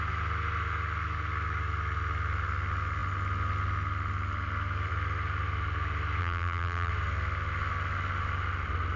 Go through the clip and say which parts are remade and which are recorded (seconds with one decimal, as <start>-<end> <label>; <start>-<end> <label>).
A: 0.0-6.2 recorded; 6.2-6.9 remade; 6.9-9.0 recorded